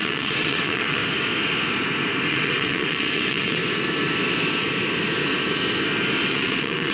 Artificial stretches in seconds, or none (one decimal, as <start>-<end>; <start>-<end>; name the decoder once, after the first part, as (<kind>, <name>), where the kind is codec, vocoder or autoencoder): 0.0-1.0 (vocoder, WaveNeXt); 2.3-3.6; 6.3-6.9